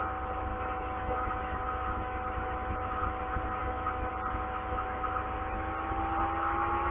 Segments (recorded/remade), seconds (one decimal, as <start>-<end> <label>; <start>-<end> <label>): 0.0-0.5 recorded; 0.5-3.0 remade; 3.0-3.6 recorded; 3.6-4.1 remade; 4.1-6.9 recorded